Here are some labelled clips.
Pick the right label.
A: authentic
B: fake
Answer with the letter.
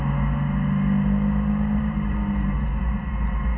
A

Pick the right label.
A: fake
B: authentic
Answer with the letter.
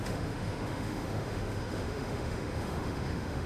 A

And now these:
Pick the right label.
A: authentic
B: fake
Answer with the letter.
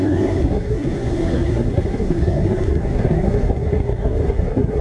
B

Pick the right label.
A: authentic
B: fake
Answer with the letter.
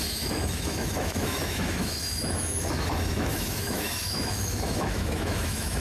B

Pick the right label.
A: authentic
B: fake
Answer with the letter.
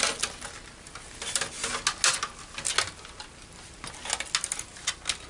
A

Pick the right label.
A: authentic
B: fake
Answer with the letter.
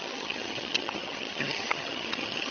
B